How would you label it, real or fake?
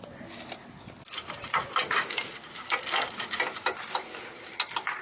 real